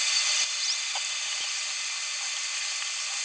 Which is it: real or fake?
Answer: real